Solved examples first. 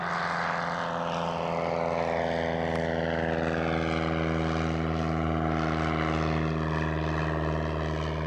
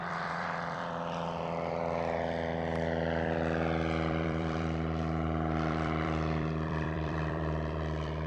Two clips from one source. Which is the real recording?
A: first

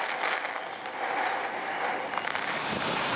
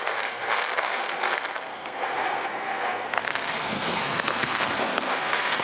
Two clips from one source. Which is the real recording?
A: first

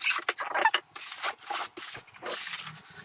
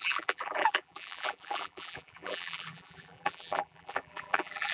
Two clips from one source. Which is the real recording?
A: first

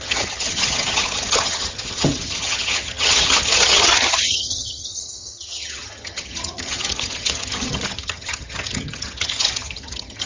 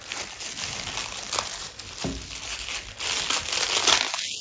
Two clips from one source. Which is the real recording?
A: second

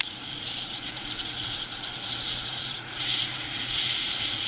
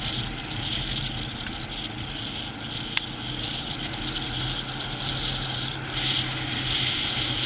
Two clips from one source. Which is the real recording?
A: second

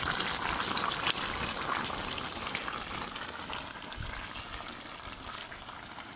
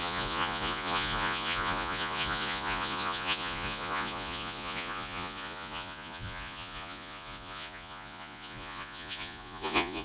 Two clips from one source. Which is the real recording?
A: first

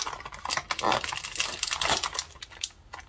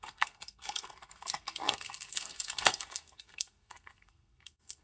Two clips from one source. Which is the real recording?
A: first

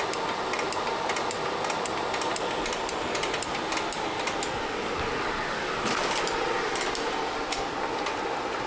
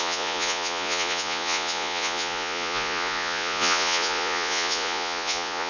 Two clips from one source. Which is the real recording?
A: first